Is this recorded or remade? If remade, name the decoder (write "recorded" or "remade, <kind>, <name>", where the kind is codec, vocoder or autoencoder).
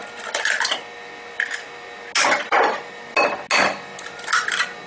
recorded